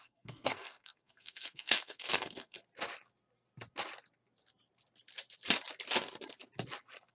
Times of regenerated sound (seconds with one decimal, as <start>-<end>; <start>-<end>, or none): 0.0-2.6

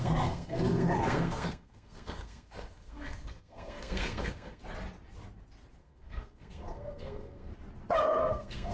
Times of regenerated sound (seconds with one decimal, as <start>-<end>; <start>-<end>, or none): 0.0-4.6; 5.8-7.5; 8.2-8.7